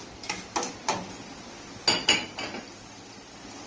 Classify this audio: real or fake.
real